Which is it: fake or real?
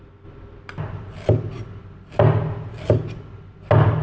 real